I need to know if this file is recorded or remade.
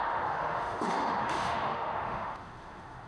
remade